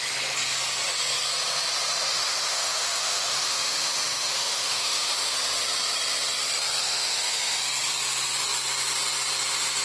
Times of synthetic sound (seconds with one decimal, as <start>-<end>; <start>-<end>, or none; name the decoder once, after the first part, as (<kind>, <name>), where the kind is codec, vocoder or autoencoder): 2.1-5.3 (autoencoder, DAC-VAE); 6.8-7.6